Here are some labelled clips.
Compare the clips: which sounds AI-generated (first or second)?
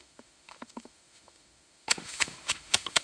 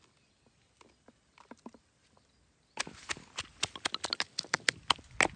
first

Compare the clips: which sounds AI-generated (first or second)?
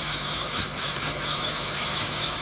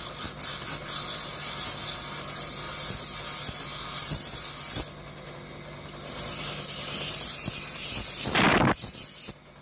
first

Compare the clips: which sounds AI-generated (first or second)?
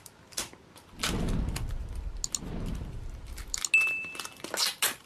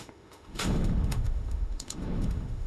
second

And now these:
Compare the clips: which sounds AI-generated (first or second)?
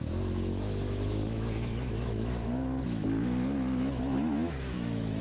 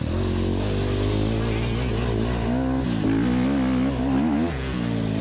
first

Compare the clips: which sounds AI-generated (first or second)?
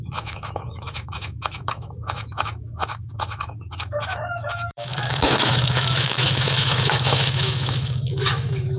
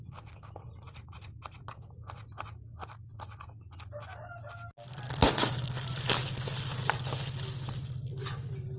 first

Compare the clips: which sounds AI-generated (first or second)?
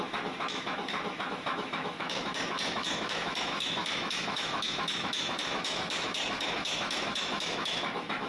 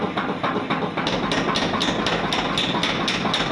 first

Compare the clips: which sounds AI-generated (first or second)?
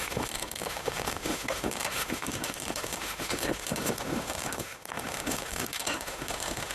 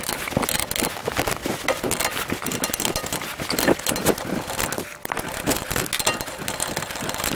first